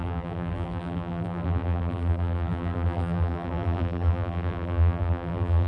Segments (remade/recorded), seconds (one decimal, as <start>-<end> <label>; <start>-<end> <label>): 0.0-5.7 remade